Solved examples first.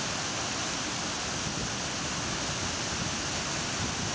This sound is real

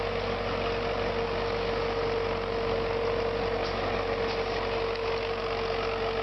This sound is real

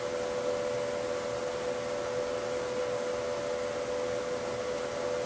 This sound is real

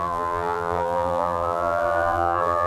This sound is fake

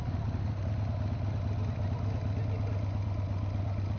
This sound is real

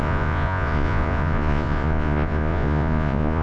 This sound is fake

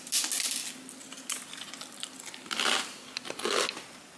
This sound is real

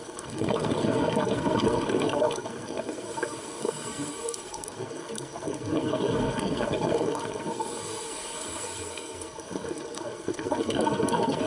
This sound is fake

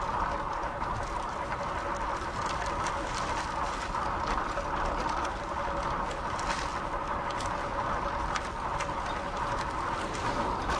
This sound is real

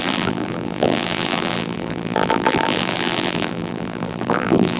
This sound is fake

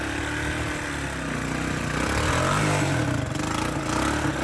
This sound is real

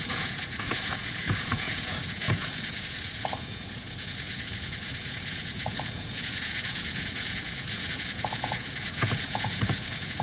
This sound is fake